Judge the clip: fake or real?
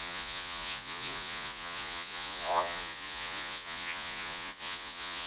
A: fake